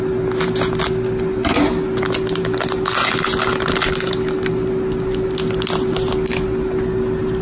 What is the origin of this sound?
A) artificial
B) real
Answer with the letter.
B